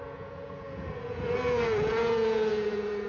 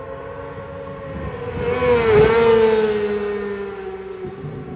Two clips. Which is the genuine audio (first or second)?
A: second